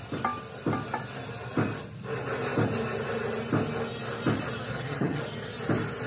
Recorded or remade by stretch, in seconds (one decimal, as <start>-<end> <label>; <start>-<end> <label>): 0.0-4.7 recorded; 4.7-5.2 remade; 5.2-6.1 recorded